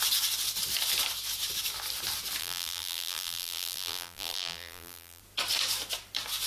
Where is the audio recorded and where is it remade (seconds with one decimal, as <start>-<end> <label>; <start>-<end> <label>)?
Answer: 0.0-2.4 recorded; 2.4-5.2 remade; 5.2-6.5 recorded